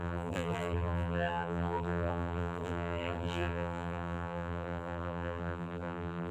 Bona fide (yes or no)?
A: no